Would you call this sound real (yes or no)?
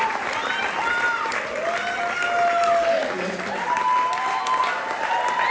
yes